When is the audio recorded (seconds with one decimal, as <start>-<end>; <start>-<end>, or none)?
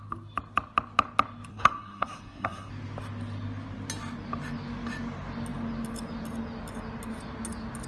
0.0-1.5; 2.7-7.9